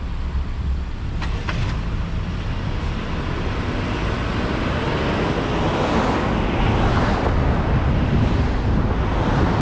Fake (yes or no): no